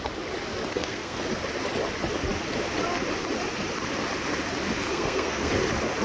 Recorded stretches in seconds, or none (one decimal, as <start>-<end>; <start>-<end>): 0.0-0.7; 1.2-4.9; 5.5-6.0